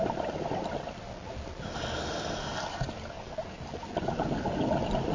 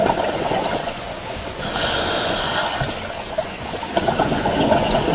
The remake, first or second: second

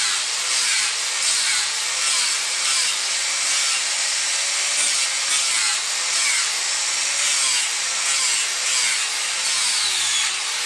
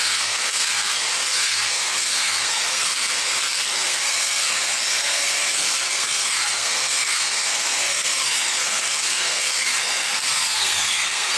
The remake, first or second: second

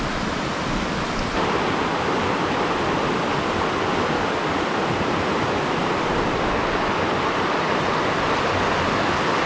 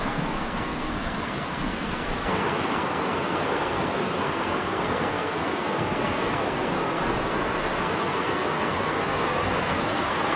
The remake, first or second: second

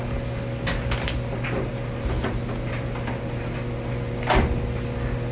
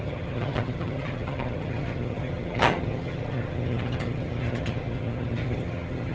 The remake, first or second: second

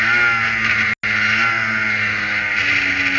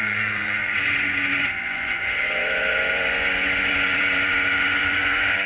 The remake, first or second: second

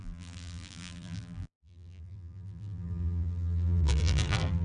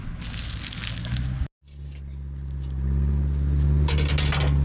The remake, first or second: first